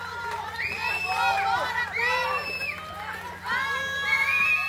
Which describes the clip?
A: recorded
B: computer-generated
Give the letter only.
A